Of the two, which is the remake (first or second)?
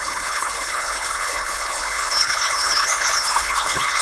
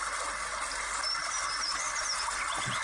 first